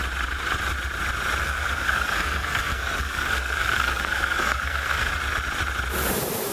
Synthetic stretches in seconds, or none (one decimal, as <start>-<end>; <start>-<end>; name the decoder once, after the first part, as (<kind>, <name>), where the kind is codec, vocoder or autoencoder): 1.4-5.1 (codec, SNAC)